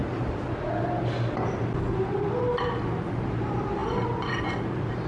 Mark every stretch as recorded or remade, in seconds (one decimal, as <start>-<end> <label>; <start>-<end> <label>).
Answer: 0.0-5.1 recorded